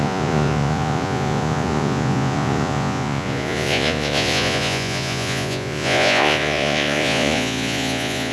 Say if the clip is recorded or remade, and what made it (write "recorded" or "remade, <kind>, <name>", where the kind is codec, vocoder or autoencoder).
remade, vocoder, Vocos